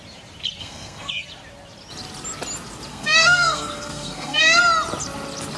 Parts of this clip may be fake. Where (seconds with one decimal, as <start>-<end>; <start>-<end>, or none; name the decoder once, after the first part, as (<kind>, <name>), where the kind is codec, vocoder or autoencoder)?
0.6-1.1 (codec, SNAC); 2.9-4.6